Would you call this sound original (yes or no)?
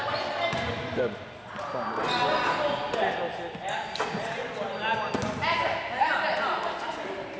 yes